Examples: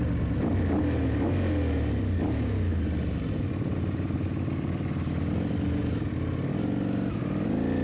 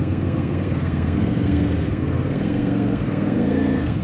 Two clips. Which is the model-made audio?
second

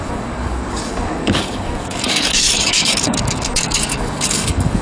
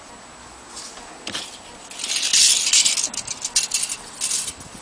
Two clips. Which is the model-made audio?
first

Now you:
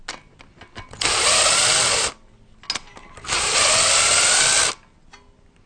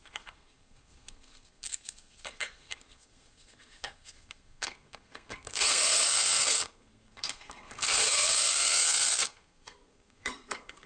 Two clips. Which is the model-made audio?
second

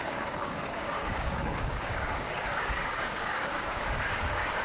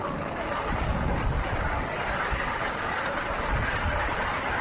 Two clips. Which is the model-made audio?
first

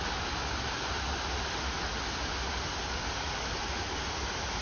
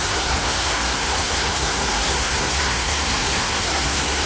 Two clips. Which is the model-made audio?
second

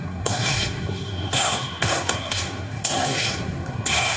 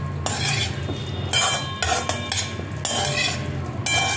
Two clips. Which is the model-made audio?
first